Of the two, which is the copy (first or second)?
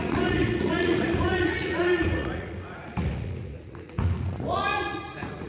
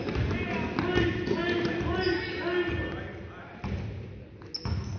first